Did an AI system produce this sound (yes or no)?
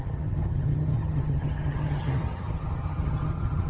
yes